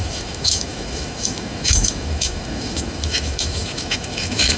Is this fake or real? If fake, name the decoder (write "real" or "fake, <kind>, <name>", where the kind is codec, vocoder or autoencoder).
fake, autoencoder, DAC-VAE